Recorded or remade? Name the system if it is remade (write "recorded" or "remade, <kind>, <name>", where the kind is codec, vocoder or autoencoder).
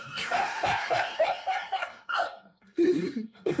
remade, codec, SNAC